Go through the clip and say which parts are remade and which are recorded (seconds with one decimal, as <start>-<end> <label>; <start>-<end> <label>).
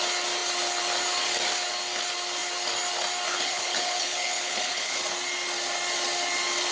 0.0-3.3 recorded; 3.3-5.0 remade; 5.0-6.7 recorded